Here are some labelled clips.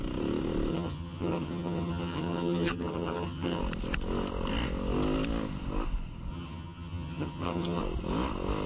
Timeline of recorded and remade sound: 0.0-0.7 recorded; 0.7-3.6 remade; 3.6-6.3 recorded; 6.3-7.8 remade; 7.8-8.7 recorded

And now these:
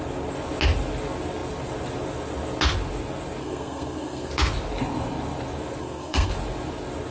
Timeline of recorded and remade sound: 0.0-3.4 recorded; 3.4-4.3 remade; 4.3-5.8 recorded; 5.8-6.3 remade; 6.3-7.1 recorded

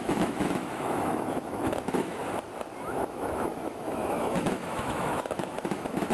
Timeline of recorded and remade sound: 0.0-2.2 remade; 2.2-2.8 recorded; 2.8-6.1 remade

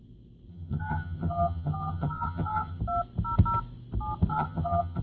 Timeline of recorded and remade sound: 0.0-0.5 recorded; 0.5-2.8 remade; 2.8-4.3 recorded; 4.3-5.0 remade

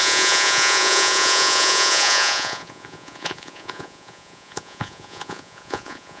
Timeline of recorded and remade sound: 0.0-6.2 remade

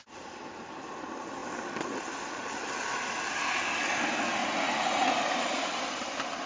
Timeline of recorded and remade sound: 0.0-4.4 recorded; 4.4-5.7 remade; 5.7-6.5 recorded

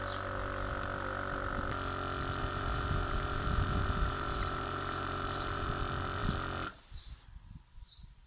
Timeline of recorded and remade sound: 0.0-2.4 recorded; 2.4-5.8 remade; 5.8-8.3 recorded